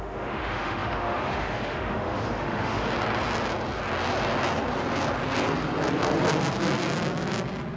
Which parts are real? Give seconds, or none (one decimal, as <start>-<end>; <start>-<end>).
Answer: 2.8-7.8

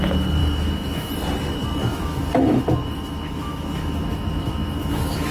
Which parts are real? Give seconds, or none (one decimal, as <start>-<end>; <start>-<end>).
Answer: 0.0-0.4; 1.1-1.8

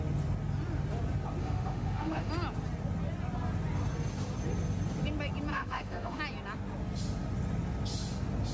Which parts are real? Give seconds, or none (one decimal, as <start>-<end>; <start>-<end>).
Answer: 0.0-1.4; 2.3-5.5; 6.2-8.5

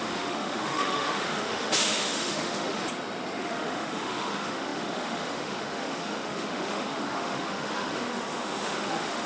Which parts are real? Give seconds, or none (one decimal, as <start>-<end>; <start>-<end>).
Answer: 2.8-3.4